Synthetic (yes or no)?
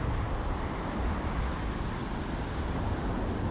no